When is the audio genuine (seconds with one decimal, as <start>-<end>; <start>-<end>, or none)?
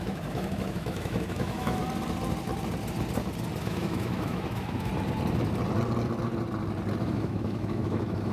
1.8-3.6; 4.9-7.0